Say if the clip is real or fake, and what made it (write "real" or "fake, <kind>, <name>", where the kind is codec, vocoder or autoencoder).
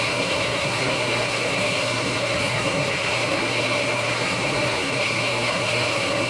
fake, codec, SNAC